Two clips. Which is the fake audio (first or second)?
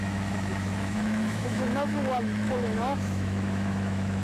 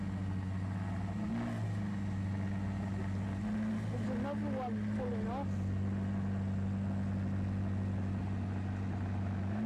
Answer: first